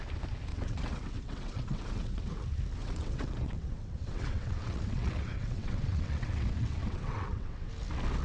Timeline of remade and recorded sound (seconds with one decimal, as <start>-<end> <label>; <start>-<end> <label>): 0.0-0.5 recorded; 0.5-2.3 remade; 2.3-2.8 recorded; 2.8-7.7 remade; 7.7-8.2 recorded